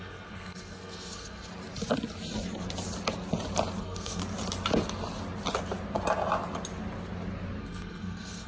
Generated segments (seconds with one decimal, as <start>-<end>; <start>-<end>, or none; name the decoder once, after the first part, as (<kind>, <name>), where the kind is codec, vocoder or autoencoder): 0.0-1.5 (codec, SNAC); 3.8-4.2; 7.6-8.5